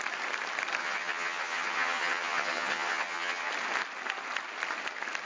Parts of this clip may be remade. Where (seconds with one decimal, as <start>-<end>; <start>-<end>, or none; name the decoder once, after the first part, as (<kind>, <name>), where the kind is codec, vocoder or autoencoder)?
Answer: 0.8-3.5 (vocoder, HiFi-GAN)